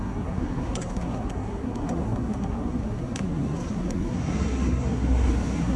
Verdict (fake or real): fake